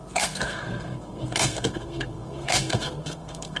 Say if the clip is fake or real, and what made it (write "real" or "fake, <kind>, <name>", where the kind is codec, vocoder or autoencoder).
fake, codec, SNAC